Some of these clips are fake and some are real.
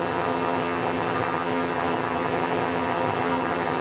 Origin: fake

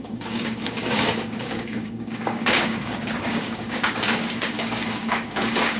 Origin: fake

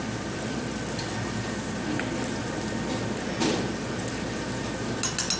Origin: real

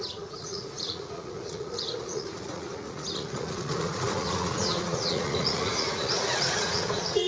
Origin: fake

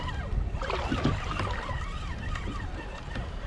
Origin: real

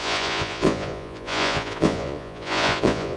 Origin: fake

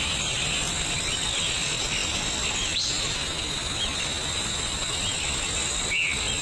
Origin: real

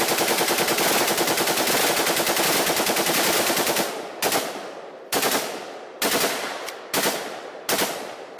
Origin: fake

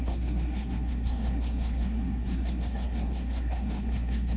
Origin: fake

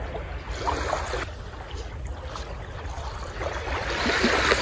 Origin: real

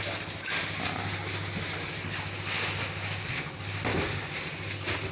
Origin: real